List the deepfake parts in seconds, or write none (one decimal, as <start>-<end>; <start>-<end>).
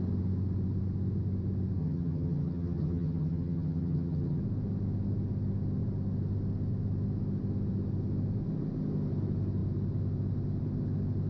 1.8-4.4